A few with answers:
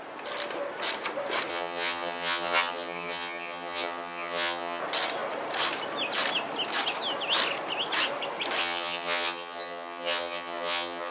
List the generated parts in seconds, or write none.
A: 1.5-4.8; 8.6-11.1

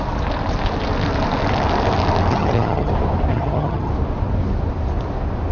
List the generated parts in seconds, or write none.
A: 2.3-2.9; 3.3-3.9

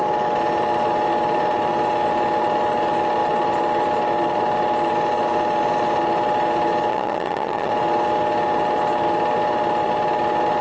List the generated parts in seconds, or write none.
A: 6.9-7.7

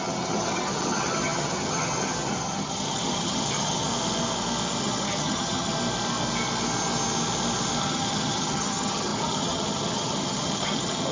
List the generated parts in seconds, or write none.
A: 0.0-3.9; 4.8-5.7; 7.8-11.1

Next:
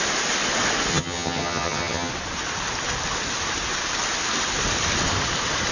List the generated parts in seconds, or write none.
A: 0.9-2.1

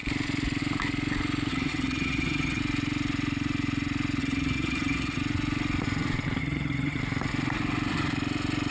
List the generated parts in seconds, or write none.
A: 1.5-2.6; 4.2-5.2; 6.4-7.0

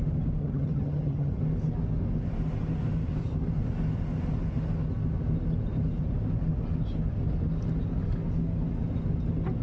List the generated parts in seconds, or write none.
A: 0.4-1.4

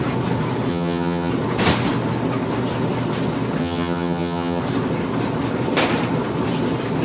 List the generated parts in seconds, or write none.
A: 0.7-1.3; 3.6-4.6